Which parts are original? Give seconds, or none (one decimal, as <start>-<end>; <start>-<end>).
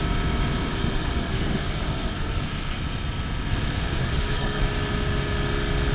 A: 0.0-0.7; 2.8-4.0; 4.6-5.9